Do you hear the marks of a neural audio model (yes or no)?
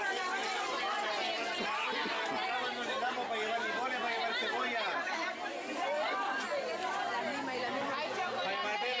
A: no